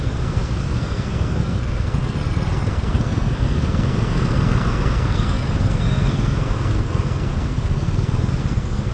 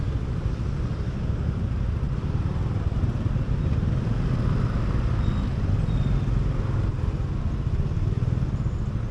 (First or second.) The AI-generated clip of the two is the first